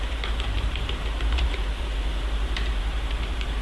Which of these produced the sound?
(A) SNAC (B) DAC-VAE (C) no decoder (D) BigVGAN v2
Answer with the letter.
D